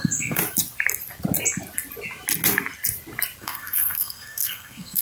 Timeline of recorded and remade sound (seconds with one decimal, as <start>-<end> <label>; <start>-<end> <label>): 0.0-0.4 remade; 0.4-3.4 recorded; 3.4-5.0 remade